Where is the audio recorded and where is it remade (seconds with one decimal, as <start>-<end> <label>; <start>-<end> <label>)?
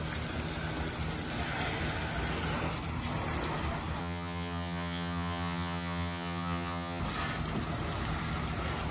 0.0-4.0 recorded; 4.0-7.0 remade; 7.0-8.9 recorded